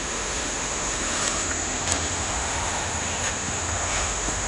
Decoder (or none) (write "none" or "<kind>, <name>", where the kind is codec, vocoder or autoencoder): autoencoder, DAC-VAE